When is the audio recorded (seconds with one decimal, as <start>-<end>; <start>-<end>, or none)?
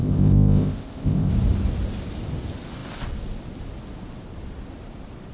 1.3-5.3